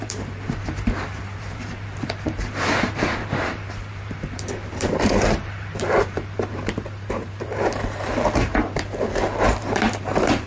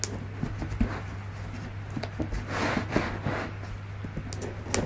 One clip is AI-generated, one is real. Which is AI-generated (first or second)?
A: first